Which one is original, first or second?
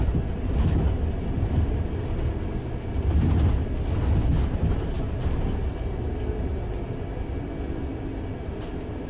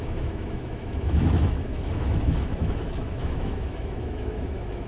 first